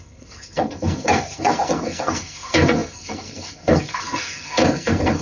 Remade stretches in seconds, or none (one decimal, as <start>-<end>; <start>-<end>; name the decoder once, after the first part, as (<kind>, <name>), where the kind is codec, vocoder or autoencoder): 0.0-5.2 (codec, SNAC)